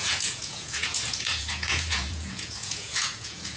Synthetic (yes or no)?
yes